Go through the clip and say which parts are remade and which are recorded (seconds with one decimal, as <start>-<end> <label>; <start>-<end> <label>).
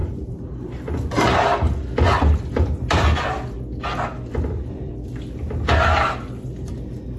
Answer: 0.0-0.8 remade; 0.8-7.2 recorded